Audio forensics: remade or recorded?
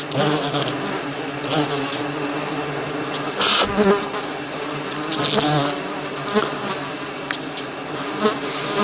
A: recorded